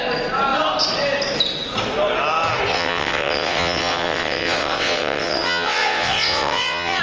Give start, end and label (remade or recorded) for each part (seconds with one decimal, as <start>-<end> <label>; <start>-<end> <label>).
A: 0.0-2.7 recorded; 2.7-7.0 remade